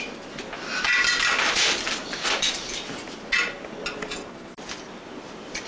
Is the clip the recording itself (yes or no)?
yes